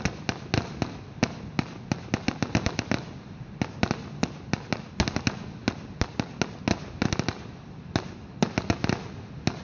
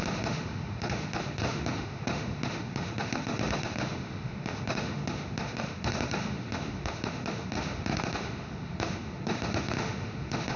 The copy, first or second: second